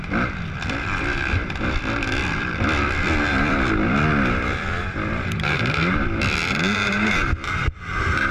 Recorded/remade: remade